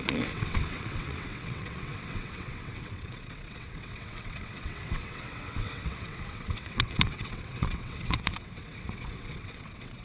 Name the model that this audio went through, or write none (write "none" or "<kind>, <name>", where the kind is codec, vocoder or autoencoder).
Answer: vocoder, WaveNeXt